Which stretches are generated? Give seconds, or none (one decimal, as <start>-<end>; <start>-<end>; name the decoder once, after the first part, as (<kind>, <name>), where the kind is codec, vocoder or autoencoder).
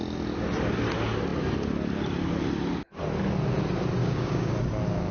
4.0-4.5 (codec, DAC)